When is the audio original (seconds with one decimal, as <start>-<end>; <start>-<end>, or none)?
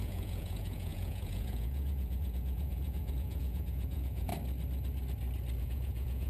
4.3-5.6